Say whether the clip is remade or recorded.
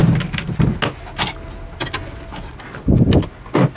recorded